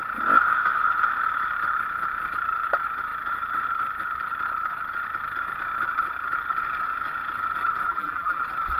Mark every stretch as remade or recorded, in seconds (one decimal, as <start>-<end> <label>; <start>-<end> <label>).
0.0-7.9 recorded; 7.9-8.4 remade; 8.4-8.8 recorded